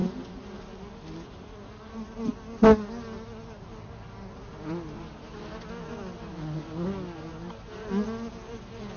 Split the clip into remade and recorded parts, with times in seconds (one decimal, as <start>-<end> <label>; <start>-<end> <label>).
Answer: 0.0-9.0 recorded